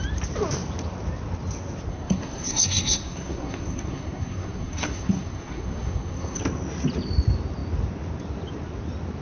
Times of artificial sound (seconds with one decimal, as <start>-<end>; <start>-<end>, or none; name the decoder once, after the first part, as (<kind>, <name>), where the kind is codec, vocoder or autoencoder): 1.9-6.4 (codec, SNAC)